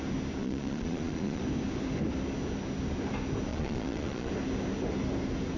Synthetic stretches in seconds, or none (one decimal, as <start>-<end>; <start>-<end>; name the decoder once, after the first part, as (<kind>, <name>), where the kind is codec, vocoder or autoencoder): 0.4-1.4 (vocoder, Vocos); 3.5-4.3